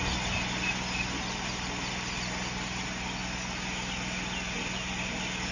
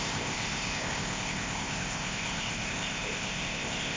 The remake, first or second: second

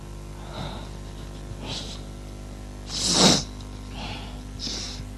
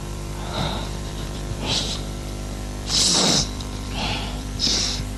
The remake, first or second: second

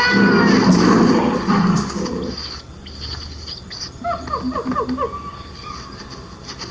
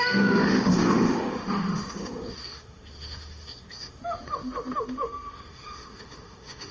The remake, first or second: second